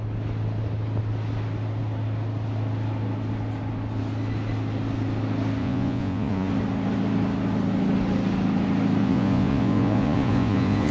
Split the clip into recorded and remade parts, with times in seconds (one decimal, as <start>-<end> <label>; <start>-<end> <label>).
0.0-5.6 recorded; 5.6-6.5 remade; 6.5-9.0 recorded; 9.0-10.9 remade